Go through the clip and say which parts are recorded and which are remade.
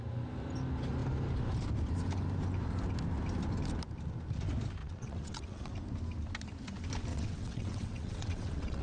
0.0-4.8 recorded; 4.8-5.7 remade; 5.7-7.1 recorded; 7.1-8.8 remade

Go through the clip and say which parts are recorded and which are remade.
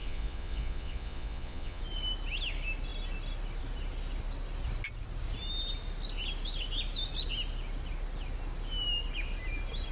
0.0-1.8 remade; 1.8-9.9 recorded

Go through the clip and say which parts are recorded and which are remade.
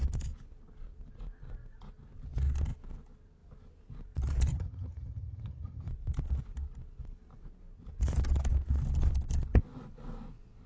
0.0-4.5 recorded; 4.5-5.9 remade; 5.9-10.7 recorded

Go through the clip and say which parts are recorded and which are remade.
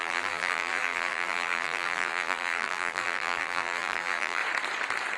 0.0-4.4 remade; 4.4-5.2 recorded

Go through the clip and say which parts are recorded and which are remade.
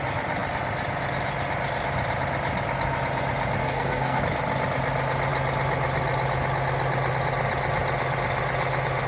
0.0-3.6 recorded; 3.6-4.2 remade; 4.2-9.1 recorded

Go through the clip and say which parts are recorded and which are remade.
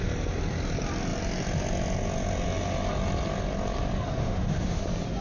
0.0-4.2 recorded; 4.2-4.8 remade; 4.8-5.2 recorded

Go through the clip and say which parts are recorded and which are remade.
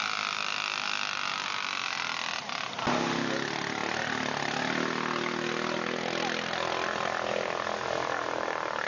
0.0-8.9 recorded